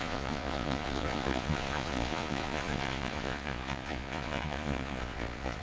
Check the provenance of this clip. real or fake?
fake